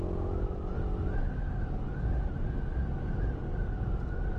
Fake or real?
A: real